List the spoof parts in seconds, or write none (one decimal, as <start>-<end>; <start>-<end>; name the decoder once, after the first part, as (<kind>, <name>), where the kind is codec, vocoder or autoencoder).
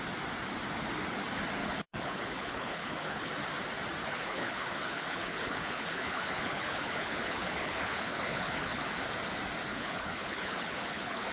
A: 1.6-3.3 (codec, HILCodec); 4.0-9.0; 9.7-11.3